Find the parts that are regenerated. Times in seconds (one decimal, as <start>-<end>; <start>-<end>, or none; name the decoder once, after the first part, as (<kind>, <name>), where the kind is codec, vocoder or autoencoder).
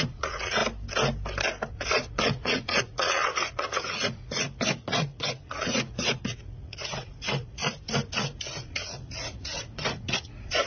0.0-0.6 (vocoder, Vocos); 1.7-7.6; 8.1-10.7